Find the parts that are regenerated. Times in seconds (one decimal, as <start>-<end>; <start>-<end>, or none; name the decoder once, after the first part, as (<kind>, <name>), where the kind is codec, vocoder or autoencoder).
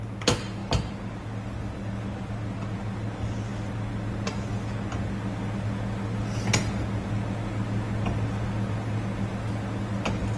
none